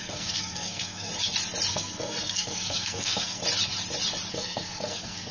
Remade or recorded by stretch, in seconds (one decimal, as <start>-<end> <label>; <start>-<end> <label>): 0.0-1.1 remade; 1.1-1.7 recorded; 1.7-3.4 remade; 3.4-4.3 recorded; 4.3-5.3 remade